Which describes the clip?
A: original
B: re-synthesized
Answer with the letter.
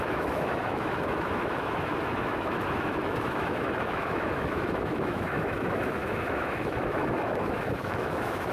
B